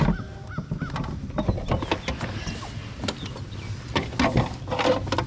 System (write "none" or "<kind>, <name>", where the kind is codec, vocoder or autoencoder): none